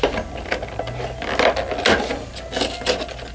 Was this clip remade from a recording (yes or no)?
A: no